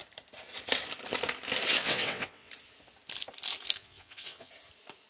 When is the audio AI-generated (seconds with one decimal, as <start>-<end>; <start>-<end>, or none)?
1.8-2.5; 3.8-4.5